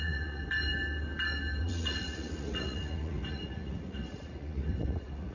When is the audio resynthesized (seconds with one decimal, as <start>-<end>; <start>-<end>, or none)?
0.0-0.4; 1.6-5.3